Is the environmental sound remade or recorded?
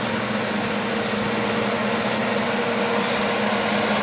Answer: recorded